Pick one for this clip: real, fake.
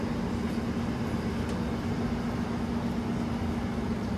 real